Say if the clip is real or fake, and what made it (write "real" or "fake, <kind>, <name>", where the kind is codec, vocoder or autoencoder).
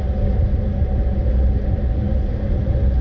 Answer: real